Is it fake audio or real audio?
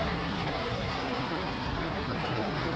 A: fake